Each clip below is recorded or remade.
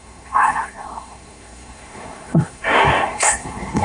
remade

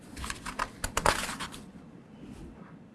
recorded